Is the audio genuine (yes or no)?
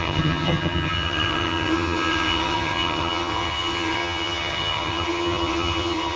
no